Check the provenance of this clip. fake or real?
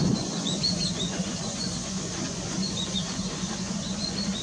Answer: fake